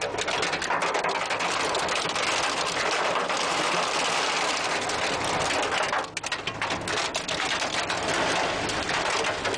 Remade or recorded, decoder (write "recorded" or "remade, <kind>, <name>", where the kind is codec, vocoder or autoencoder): recorded